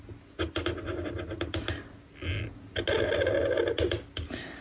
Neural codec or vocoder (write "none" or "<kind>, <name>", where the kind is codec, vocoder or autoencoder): none